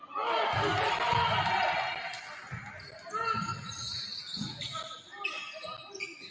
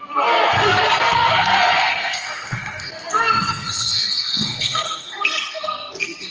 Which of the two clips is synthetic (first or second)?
second